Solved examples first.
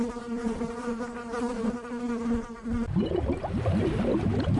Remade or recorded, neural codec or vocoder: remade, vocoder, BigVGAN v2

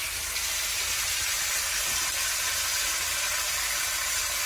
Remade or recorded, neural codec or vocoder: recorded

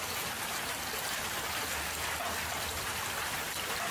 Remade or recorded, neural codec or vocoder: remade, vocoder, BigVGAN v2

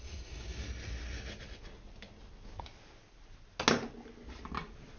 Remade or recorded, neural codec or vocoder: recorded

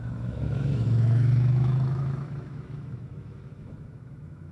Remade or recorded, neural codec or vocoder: remade, autoencoder, DAC-VAE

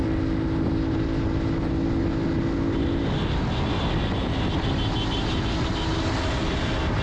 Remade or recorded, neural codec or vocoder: recorded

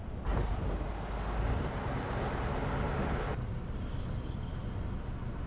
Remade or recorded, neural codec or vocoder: recorded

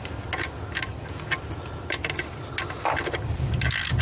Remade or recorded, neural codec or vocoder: recorded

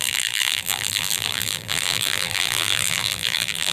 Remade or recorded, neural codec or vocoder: remade, vocoder, BigVGAN v2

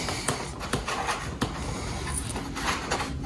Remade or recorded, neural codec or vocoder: recorded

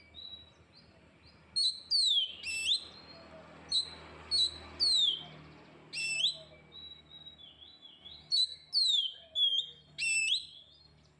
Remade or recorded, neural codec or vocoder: recorded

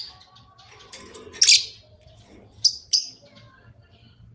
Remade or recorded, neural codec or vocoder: recorded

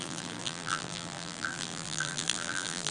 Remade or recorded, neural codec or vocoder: remade, vocoder, BigVGAN v2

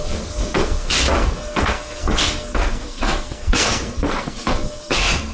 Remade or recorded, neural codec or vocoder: remade, codec, SNAC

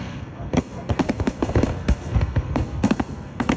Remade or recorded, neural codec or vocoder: remade, codec, SNAC